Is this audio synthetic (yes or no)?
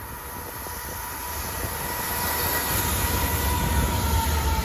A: no